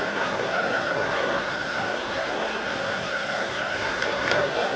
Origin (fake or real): fake